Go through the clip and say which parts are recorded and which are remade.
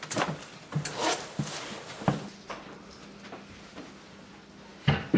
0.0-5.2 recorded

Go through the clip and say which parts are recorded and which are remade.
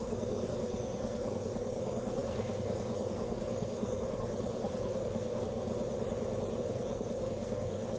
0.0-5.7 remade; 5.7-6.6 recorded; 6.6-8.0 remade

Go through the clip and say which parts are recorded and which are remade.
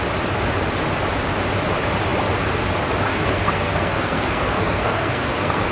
0.0-3.1 recorded; 3.1-5.7 remade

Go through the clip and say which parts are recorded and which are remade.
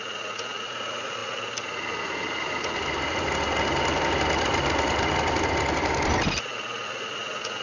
0.0-7.6 recorded